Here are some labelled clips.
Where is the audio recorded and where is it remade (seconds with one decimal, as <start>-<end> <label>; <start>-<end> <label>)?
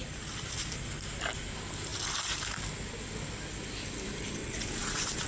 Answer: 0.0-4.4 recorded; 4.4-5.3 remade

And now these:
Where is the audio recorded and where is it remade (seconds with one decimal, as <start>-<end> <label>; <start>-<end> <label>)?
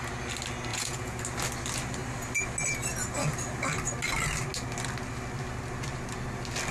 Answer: 0.0-0.7 recorded; 0.7-1.2 remade; 1.2-6.7 recorded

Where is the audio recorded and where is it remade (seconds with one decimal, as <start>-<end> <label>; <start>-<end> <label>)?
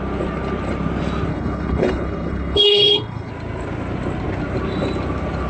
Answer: 0.0-1.3 recorded; 1.3-3.3 remade; 3.3-5.5 recorded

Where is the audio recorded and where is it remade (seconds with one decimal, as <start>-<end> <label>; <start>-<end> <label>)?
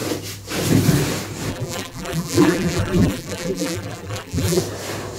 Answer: 0.0-1.5 recorded; 1.5-4.6 remade; 4.6-5.2 recorded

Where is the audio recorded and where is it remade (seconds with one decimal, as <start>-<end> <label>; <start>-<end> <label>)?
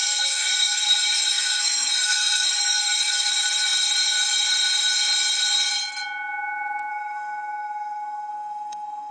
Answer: 0.0-3.3 remade; 3.3-6.9 recorded; 6.9-9.1 remade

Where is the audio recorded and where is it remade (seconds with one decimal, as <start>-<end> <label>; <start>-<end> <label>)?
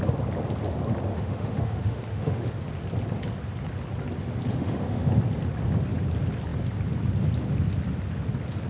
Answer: 0.0-1.1 recorded; 1.1-2.5 remade; 2.5-4.5 recorded; 4.5-5.1 remade; 5.1-8.7 recorded